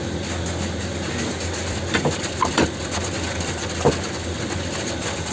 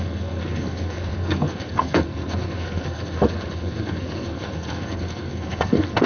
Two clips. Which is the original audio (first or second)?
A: first